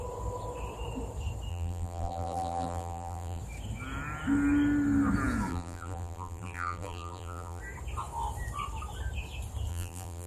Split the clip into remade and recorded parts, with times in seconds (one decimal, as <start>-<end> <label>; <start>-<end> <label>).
0.0-1.5 recorded; 1.5-3.4 remade; 3.4-5.5 recorded; 5.5-7.6 remade; 7.6-9.7 recorded; 9.7-10.3 remade